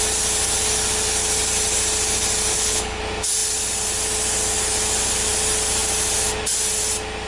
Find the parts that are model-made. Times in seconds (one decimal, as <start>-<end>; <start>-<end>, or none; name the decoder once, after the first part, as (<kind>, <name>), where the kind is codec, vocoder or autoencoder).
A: 2.5-3.0 (codec, HILCodec)